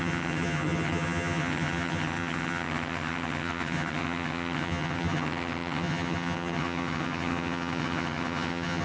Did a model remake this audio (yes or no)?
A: yes